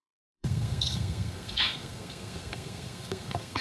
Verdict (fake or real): fake